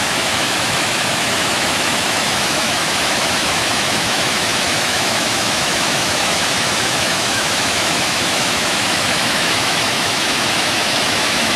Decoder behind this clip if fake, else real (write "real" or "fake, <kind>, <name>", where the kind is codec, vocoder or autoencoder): fake, autoencoder, DAC-VAE